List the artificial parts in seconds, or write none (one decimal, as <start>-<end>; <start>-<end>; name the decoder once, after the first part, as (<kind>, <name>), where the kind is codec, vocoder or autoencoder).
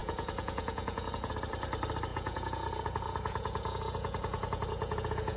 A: 0.0-1.3 (vocoder, Vocos); 2.1-5.4